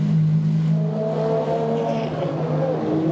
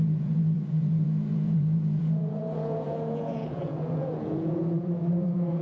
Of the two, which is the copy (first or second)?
second